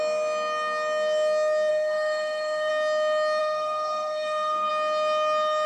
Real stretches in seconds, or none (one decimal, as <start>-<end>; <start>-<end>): 0.0-1.7; 2.7-3.4; 4.7-5.7